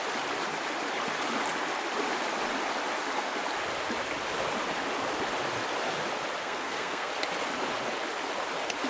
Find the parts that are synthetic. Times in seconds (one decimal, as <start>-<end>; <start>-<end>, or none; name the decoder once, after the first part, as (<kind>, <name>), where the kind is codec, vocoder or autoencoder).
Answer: 6.4-7.1 (codec, SNAC)